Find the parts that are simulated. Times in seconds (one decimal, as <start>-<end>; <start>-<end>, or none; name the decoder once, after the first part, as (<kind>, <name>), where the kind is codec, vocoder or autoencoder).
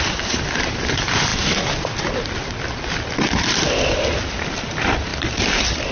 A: none